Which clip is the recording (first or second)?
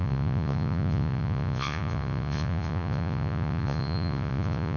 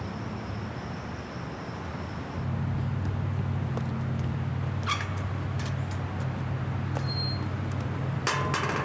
second